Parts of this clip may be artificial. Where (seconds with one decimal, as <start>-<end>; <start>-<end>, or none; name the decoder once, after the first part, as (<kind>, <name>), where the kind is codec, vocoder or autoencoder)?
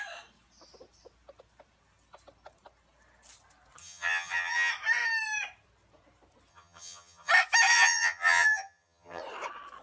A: 3.8-4.7 (vocoder, HiFi-GAN); 6.5-7.3; 7.7-9.2